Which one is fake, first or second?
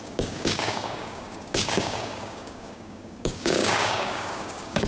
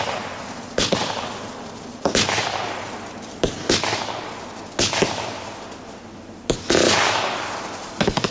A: first